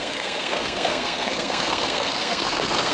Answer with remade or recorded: remade